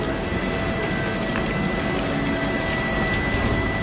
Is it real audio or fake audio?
real